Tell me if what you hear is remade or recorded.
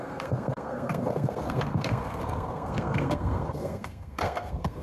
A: remade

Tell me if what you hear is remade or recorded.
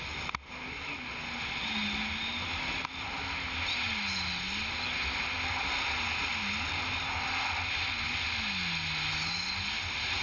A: recorded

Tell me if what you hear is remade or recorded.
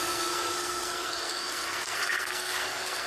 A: remade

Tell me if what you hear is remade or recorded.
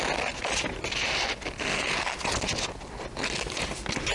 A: recorded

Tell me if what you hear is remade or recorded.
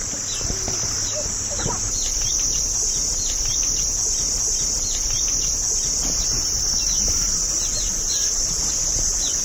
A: recorded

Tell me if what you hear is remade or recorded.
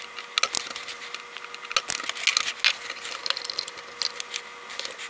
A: recorded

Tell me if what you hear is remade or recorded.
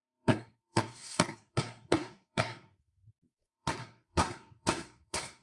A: remade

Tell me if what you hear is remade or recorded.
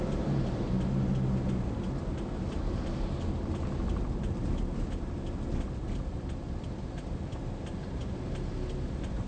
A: recorded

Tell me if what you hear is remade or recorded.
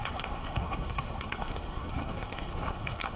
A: remade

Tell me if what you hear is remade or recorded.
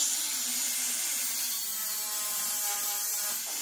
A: recorded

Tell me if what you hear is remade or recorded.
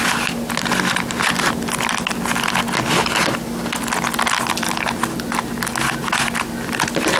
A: recorded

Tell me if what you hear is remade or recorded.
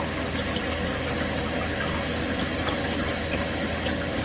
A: recorded